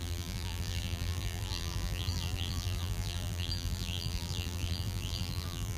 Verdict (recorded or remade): remade